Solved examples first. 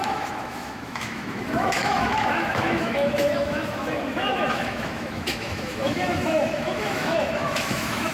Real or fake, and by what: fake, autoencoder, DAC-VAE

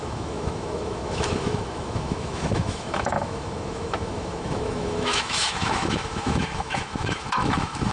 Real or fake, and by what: fake, autoencoder, DAC-VAE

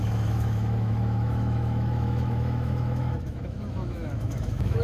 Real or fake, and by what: fake, autoencoder, DAC-VAE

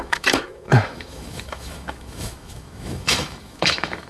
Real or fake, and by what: fake, autoencoder, DAC-VAE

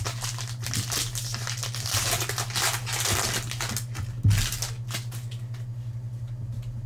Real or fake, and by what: real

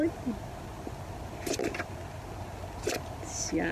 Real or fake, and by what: real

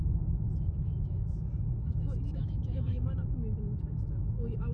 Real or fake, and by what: fake, autoencoder, DAC-VAE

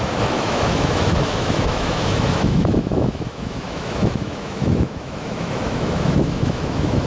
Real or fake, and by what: fake, autoencoder, DAC-VAE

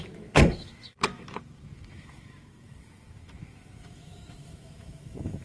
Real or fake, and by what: fake, autoencoder, DAC-VAE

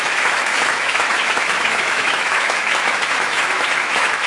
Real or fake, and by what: fake, autoencoder, DAC-VAE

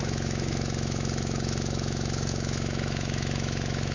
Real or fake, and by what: fake, autoencoder, DAC-VAE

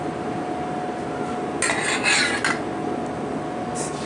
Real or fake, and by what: real